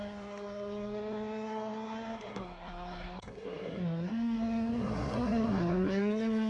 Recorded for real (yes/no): no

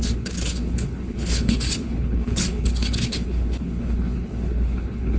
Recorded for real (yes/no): no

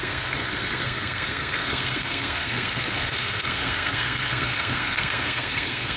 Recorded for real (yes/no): no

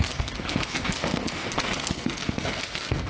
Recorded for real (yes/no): no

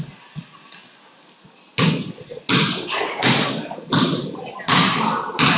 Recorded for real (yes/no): yes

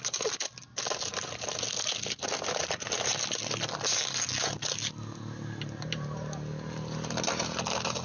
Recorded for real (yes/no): yes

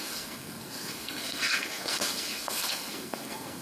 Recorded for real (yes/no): no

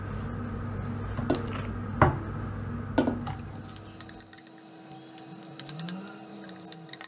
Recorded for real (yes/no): yes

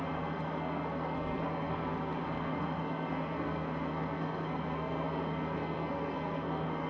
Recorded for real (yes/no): no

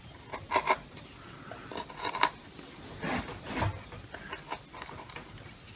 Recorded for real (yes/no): yes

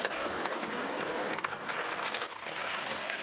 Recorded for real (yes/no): no